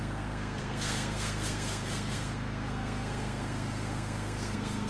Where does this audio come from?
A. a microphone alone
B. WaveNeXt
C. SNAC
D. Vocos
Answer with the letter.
C